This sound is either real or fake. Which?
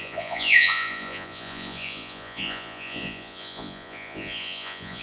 fake